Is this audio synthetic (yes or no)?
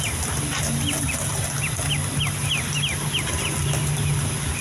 no